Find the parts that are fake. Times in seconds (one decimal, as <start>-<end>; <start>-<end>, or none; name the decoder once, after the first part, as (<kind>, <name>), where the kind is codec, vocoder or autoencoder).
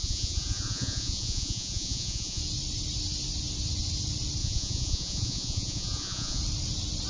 0.0-2.4 (vocoder, Vocos); 4.4-6.4